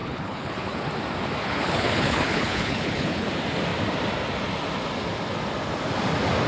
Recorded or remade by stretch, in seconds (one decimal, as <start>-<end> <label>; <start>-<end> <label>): 0.0-0.8 remade; 0.8-1.4 recorded; 1.4-3.3 remade; 3.3-6.5 recorded